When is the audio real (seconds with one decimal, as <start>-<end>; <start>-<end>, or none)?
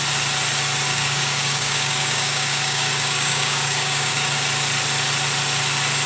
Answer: 0.0-0.9; 4.3-6.1